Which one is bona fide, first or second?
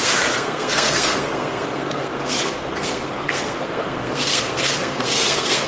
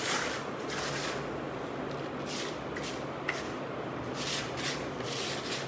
second